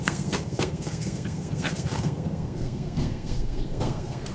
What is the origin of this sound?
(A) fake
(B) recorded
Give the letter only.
A